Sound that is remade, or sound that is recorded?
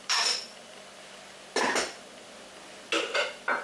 recorded